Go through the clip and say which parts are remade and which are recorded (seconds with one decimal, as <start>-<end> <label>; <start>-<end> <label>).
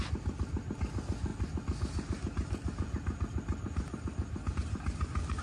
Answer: 0.0-5.4 recorded